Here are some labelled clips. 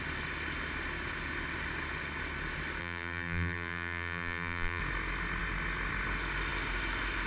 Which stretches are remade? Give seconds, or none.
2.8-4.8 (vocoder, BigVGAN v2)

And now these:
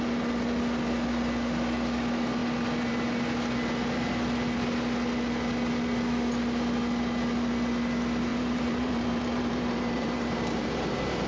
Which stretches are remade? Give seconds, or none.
8.3-11.3 (vocoder, BigVGAN v2)